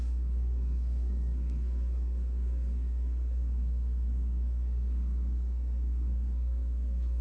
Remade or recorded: remade